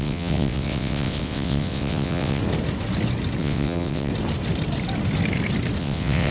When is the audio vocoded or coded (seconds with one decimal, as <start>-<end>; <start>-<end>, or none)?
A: 0.0-2.4; 3.4-4.1; 5.8-6.3